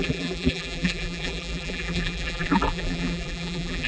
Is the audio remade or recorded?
remade